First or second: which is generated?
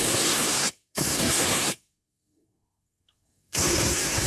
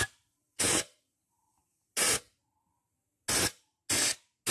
first